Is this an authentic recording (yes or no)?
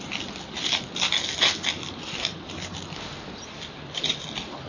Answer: no